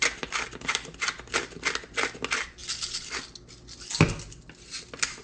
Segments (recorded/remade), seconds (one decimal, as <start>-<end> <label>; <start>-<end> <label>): 0.0-5.2 recorded